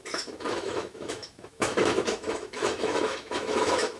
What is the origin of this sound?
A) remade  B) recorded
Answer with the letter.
A